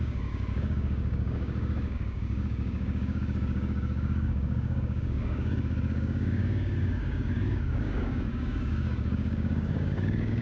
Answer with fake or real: fake